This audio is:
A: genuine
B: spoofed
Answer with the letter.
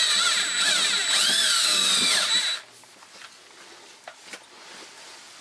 A